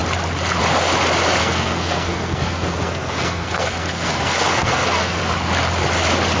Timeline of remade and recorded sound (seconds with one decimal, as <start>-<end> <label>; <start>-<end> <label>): 0.0-1.4 recorded; 1.4-5.2 remade; 5.2-6.4 recorded